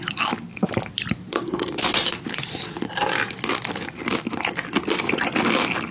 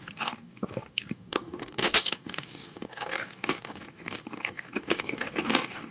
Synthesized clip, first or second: second